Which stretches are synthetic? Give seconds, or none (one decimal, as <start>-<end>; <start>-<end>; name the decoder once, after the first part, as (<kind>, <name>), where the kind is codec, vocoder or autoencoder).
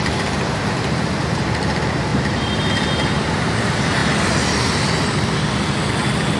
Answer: 0.0-4.0 (vocoder, BigVGAN v2)